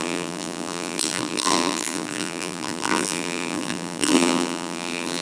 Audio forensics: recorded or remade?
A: remade